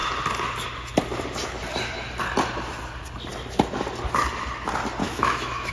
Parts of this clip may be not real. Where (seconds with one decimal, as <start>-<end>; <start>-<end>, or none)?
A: 5.0-5.7